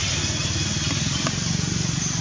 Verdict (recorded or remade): recorded